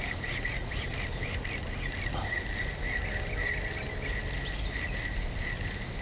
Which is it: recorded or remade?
recorded